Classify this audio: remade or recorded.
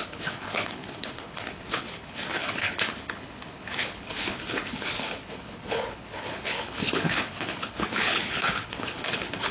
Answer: remade